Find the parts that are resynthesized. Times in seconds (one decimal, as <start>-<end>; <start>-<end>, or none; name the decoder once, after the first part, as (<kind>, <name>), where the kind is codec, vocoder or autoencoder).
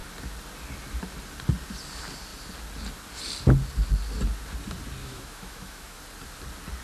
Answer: 5.0-6.0 (autoencoder, DAC-VAE)